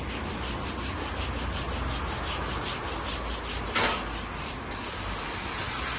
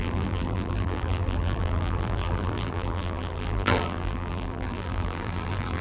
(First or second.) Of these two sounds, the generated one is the second